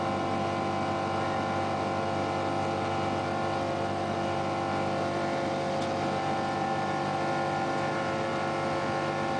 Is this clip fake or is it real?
real